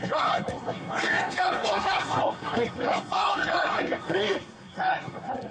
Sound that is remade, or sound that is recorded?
remade